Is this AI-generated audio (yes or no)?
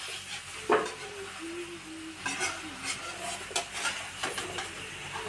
no